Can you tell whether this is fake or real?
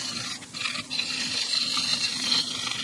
real